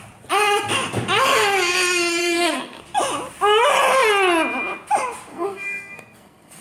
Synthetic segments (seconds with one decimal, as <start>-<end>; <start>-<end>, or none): 2.2-2.8; 5.3-6.6